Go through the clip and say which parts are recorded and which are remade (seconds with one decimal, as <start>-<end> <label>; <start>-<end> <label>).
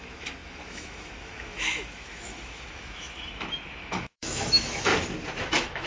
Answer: 0.0-4.9 remade; 4.9-5.5 recorded; 5.5-5.9 remade